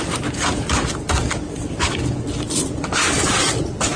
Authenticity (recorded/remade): recorded